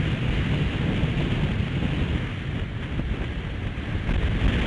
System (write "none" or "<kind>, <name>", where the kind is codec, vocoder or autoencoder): none